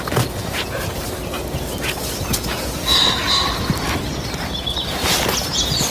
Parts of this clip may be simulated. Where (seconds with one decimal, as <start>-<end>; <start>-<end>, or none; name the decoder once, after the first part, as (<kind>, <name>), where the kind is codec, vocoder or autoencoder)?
2.3-3.0 (vocoder, Vocos)